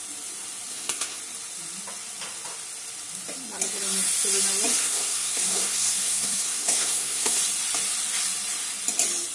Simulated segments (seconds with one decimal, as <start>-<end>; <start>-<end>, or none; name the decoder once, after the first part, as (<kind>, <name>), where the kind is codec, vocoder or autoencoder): 0.7-1.2 (codec, SNAC); 4.8-7.4